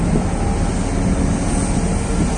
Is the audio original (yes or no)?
yes